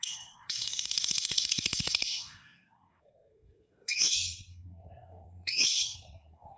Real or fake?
fake